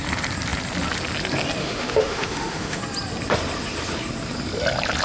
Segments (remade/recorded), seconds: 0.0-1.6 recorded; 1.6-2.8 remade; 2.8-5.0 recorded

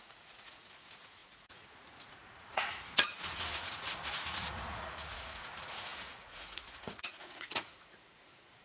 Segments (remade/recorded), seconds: 0.0-8.6 remade

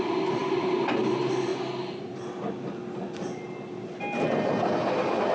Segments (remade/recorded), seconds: 0.0-5.3 recorded

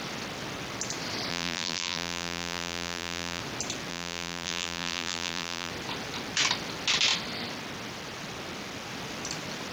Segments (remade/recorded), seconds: 0.0-1.3 recorded; 1.3-3.4 remade; 3.4-3.9 recorded; 3.9-5.7 remade; 5.7-9.7 recorded

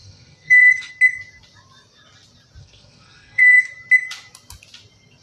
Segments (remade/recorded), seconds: 0.0-0.9 remade; 0.9-2.6 recorded; 2.6-3.6 remade; 3.6-5.2 recorded